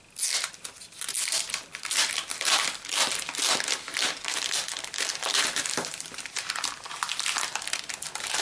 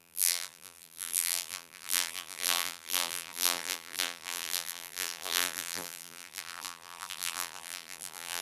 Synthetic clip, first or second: second